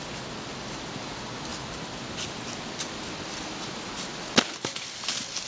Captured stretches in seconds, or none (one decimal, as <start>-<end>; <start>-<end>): 0.0-5.5